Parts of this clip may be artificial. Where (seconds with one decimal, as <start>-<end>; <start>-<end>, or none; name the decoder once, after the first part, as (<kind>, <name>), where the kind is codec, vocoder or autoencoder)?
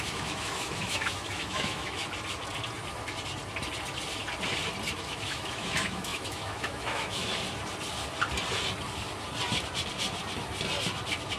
0.0-2.0 (autoencoder, DAC-VAE); 5.0-7.3